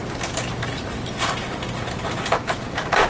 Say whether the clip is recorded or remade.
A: recorded